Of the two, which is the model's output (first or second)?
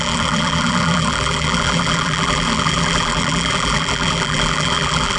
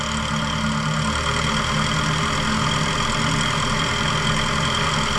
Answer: first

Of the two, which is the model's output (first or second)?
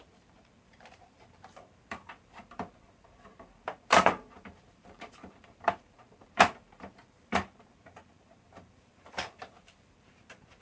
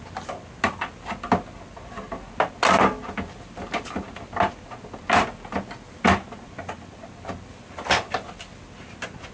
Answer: first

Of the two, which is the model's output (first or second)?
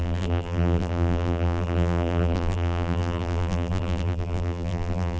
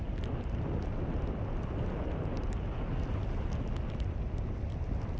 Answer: first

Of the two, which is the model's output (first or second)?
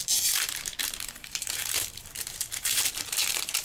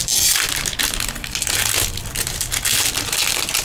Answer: first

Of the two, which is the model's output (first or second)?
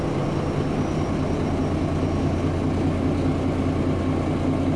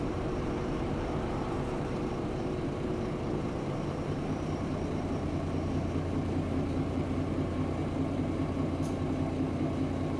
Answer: second